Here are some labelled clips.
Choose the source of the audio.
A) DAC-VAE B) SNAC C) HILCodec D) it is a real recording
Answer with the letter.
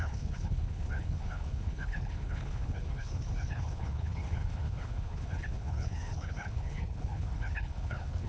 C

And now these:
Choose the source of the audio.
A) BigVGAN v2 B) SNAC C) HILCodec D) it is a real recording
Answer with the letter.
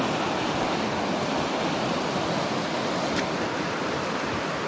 D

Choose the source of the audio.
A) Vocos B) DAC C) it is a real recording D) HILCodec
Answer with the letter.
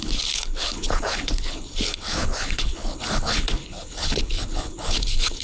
D